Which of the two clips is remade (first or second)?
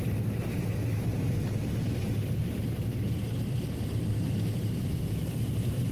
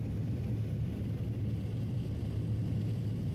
first